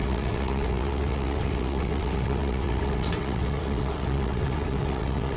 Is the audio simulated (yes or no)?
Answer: yes